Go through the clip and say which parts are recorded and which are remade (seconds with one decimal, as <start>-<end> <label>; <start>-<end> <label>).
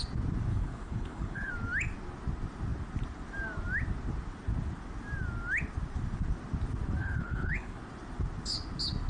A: 0.0-0.5 recorded; 0.5-1.5 remade; 1.5-7.0 recorded; 7.0-7.8 remade; 7.8-9.1 recorded